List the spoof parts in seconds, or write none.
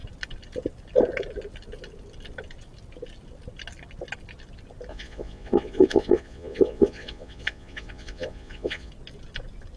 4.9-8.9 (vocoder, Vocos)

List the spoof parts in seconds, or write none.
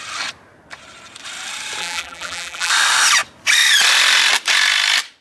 1.8-2.7 (vocoder, BigVGAN v2)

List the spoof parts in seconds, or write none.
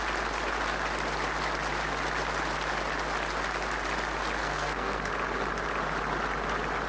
4.4-5.1 (codec, SNAC)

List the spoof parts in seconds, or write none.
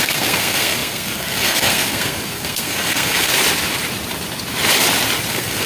0.0-3.3 (codec, SNAC); 5.3-5.7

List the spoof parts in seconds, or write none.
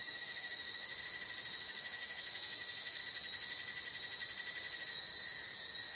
0.0-0.9 (autoencoder, DAC-VAE); 1.6-3.0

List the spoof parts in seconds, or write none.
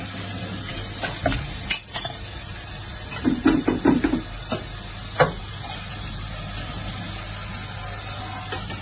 none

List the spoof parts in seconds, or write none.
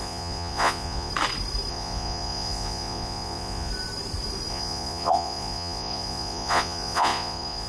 0.0-1.1 (vocoder, Vocos); 1.7-3.7; 4.5-7.7